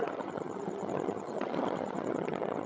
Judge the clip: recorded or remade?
remade